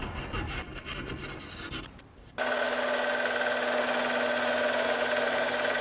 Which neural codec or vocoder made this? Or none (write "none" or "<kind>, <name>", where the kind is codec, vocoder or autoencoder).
none